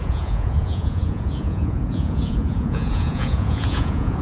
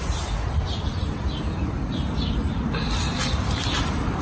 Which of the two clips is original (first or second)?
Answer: second